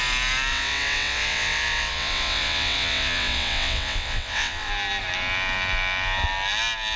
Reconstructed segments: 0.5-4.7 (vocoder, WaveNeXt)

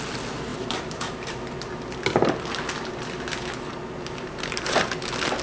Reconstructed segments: none

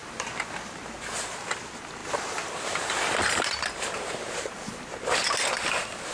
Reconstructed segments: 2.0-3.9 (vocoder, BigVGAN v2)

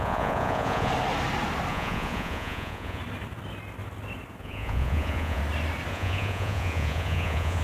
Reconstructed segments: 0.0-0.9 (vocoder, Vocos); 1.7-3.0; 4.4-5.4; 5.9-7.6

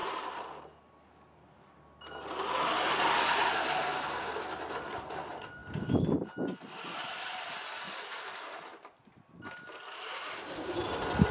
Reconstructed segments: none

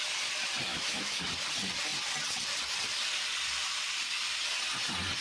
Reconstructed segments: 0.7-1.2 (autoencoder, DAC-VAE)

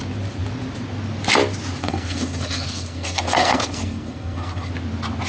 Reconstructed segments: 1.8-4.7 (codec, SNAC)

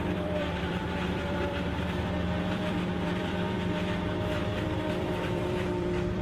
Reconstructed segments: 0.0-6.2 (vocoder, BigVGAN v2)